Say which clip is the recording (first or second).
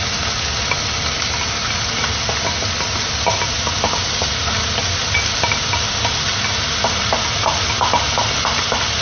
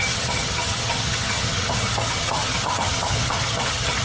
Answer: first